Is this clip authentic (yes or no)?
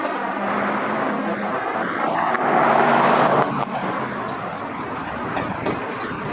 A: yes